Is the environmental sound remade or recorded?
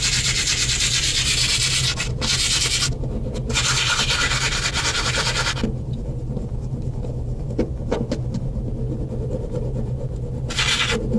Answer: recorded